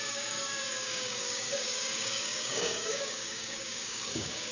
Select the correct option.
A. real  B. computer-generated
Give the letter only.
B